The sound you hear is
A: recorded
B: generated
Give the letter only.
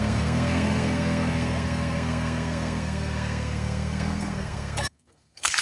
B